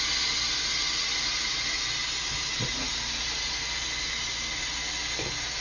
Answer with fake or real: real